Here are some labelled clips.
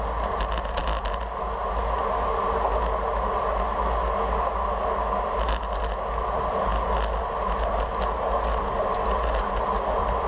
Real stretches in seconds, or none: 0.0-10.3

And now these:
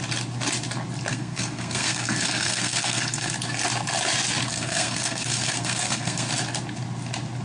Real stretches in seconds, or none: 0.0-1.1; 3.3-4.5; 6.3-7.4

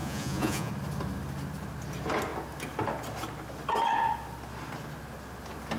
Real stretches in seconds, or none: 0.7-5.8

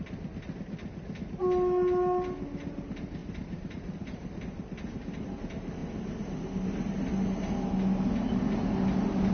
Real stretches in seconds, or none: 0.0-3.2; 4.4-9.3

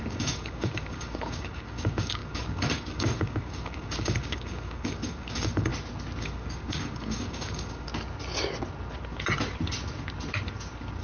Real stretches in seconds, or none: 5.7-6.2; 7.9-11.0

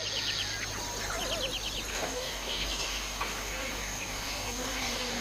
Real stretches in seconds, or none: 0.0-1.9